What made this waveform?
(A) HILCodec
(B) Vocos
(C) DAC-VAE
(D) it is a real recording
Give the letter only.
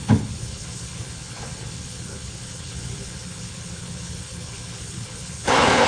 A